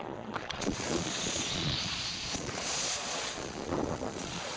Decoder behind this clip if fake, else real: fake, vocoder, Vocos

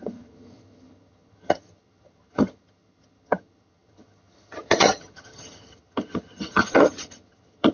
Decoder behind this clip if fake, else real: fake, vocoder, HiFi-GAN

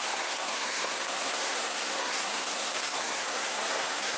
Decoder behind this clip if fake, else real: fake, codec, SNAC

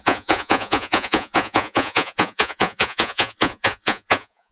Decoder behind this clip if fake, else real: fake, vocoder, Vocos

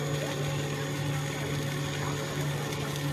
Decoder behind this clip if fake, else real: real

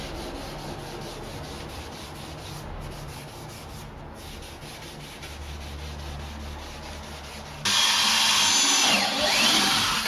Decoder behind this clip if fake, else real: real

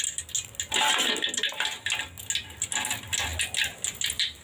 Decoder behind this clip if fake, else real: real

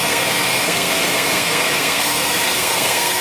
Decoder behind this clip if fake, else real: fake, codec, SNAC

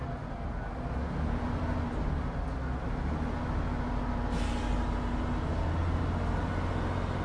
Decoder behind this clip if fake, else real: real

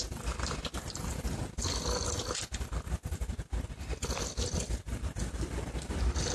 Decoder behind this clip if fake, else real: fake, vocoder, BigVGAN v2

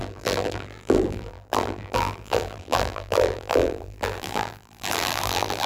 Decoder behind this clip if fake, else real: fake, vocoder, BigVGAN v2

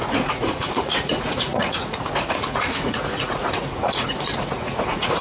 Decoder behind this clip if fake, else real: fake, vocoder, Vocos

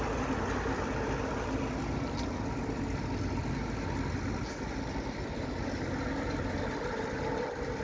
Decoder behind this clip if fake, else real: real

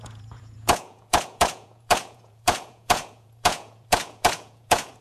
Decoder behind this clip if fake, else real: fake, vocoder, Vocos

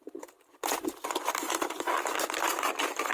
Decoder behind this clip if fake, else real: fake, vocoder, BigVGAN v2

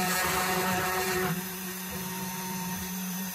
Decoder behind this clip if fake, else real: fake, vocoder, BigVGAN v2